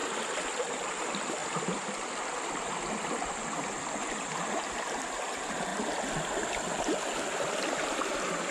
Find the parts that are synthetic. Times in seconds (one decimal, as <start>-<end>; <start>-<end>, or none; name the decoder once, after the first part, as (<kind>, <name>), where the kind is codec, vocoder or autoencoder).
0.6-5.7 (vocoder, BigVGAN v2); 7.0-8.5